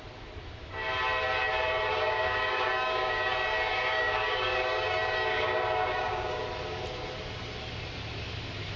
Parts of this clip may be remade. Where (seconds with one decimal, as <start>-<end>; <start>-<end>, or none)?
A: 1.9-3.3; 3.7-6.4